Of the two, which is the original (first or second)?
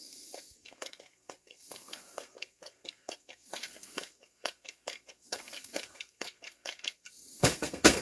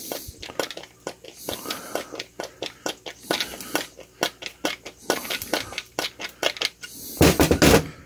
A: second